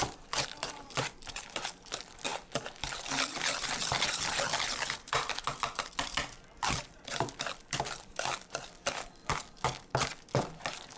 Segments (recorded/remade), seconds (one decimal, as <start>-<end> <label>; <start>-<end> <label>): 0.0-9.2 remade; 9.2-10.4 recorded; 10.4-11.0 remade